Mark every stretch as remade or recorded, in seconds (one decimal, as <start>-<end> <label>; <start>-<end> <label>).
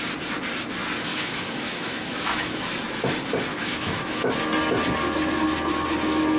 0.0-1.1 recorded; 1.1-2.6 remade; 2.6-3.5 recorded; 3.5-4.3 remade; 4.3-6.4 recorded